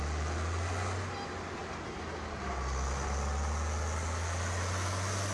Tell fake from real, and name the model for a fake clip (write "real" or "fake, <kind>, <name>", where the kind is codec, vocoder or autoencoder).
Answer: real